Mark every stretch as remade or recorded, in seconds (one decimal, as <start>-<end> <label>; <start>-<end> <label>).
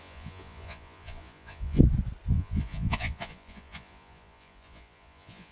0.0-1.8 remade; 1.8-2.3 recorded; 2.3-5.5 remade